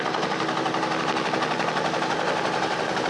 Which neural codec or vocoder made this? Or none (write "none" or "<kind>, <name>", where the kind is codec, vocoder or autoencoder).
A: none